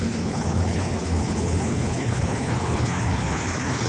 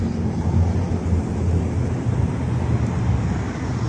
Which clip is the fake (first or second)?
first